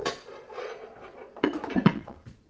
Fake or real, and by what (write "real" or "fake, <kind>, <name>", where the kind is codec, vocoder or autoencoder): fake, vocoder, Vocos